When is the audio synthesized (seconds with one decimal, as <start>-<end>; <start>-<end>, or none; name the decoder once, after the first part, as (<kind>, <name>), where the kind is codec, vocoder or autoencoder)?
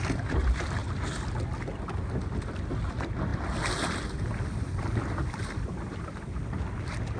none